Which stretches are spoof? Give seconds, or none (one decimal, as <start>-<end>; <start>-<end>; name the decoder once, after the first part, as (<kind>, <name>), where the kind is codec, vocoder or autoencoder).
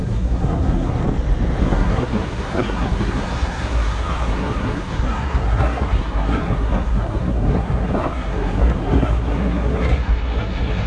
0.0-1.0 (codec, SNAC); 1.6-10.9